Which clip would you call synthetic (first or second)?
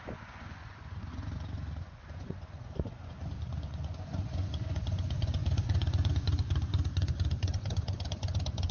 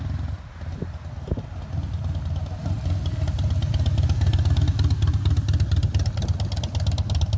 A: first